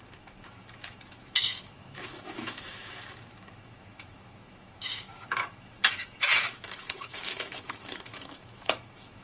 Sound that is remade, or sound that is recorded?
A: remade